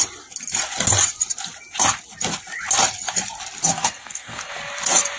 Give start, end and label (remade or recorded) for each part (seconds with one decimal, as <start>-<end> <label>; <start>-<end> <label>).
0.0-3.7 recorded; 3.7-4.5 remade; 4.5-5.2 recorded